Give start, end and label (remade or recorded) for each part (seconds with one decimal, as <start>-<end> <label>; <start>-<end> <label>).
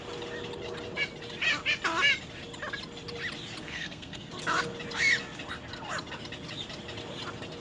0.0-3.6 recorded; 3.6-4.3 remade; 4.3-7.6 recorded